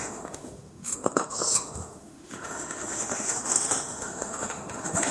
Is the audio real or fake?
fake